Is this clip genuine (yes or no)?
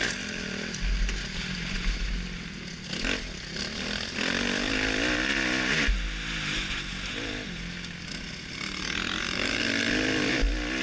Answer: yes